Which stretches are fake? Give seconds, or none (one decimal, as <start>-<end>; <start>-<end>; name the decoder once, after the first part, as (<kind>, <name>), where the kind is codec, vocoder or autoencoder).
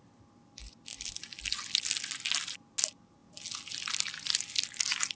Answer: none